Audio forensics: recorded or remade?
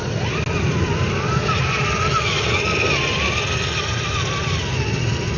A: recorded